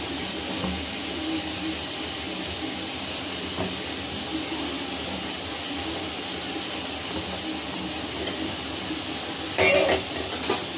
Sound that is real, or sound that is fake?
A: real